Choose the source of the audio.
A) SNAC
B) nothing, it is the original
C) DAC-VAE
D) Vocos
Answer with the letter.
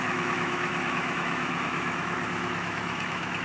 C